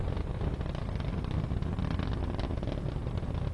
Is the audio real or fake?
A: real